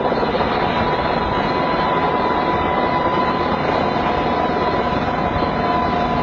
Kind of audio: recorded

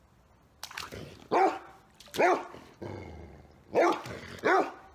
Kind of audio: recorded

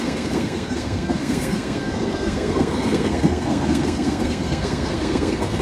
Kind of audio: remade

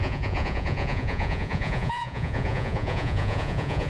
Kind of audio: remade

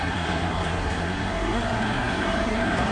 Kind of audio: remade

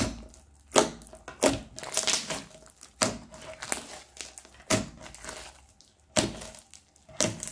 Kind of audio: recorded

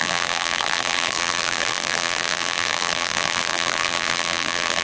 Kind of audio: remade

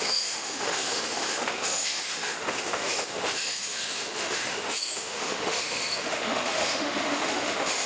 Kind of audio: remade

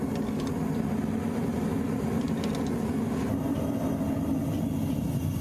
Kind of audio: recorded